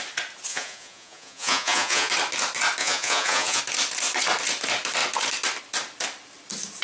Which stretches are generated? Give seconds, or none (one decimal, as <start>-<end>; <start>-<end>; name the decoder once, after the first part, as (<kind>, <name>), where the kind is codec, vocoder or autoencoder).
0.5-2.1 (vocoder, Vocos); 2.8-3.6